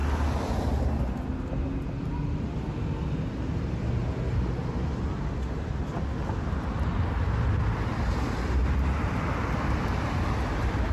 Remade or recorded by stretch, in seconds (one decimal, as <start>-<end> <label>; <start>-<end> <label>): 0.0-10.9 recorded